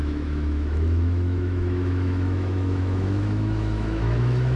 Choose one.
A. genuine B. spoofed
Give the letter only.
B